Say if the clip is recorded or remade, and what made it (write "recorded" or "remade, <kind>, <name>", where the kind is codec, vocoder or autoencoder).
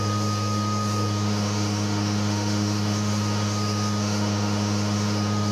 remade, autoencoder, DAC-VAE